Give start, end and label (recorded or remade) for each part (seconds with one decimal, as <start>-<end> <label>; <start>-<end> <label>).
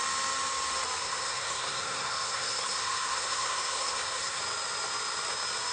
0.0-1.0 recorded; 1.0-4.4 remade; 4.4-5.7 recorded